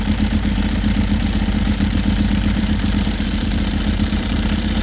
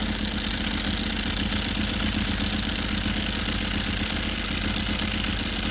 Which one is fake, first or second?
first